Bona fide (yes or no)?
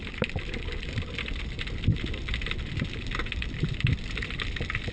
yes